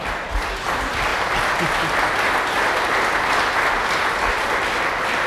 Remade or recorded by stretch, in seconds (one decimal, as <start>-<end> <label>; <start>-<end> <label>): 0.0-5.3 recorded